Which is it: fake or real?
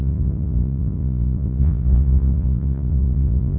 fake